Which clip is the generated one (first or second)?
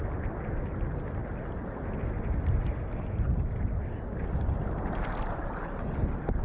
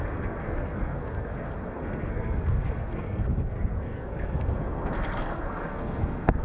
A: second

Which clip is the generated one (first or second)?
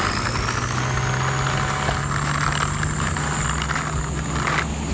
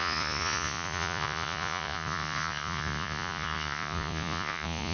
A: second